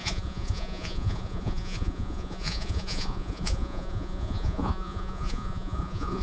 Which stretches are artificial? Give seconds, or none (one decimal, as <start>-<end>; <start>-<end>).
0.0-6.2